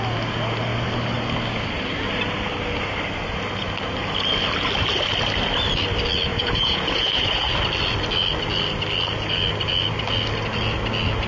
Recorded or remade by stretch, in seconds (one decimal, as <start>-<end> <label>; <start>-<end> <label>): 0.0-6.3 recorded; 6.3-7.5 remade; 7.5-11.3 recorded